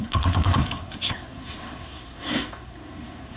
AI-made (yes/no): yes